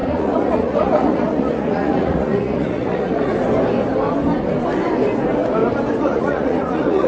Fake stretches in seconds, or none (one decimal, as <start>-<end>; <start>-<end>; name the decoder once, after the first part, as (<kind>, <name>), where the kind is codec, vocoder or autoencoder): 0.0-3.3 (vocoder, Vocos); 6.0-7.1